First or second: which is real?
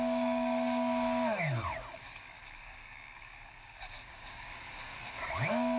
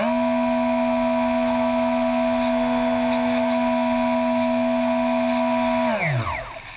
second